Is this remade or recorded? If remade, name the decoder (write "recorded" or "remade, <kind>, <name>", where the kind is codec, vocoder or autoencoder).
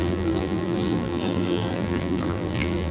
remade, vocoder, BigVGAN v2